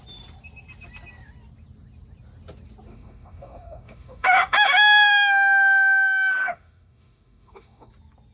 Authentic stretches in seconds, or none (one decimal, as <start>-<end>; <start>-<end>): 0.0-2.9; 7.9-8.3